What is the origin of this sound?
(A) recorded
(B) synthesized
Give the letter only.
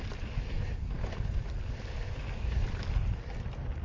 A